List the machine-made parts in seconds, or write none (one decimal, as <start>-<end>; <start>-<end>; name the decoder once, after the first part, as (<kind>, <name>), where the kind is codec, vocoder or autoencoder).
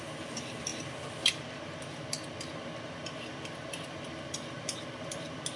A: none